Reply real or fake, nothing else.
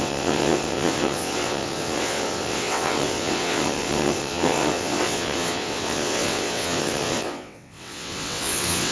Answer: fake